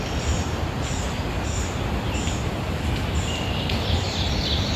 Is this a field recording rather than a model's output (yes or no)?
yes